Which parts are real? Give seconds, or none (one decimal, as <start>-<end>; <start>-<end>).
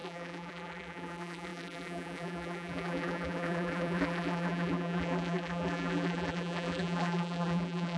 none